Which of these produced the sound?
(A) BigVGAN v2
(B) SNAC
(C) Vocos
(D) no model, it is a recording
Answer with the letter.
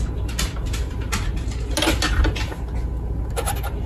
D